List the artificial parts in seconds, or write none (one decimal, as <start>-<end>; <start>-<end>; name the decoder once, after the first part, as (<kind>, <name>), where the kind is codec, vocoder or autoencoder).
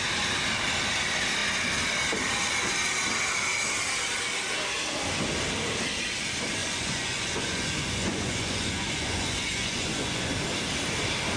6.6-10.3 (vocoder, Vocos)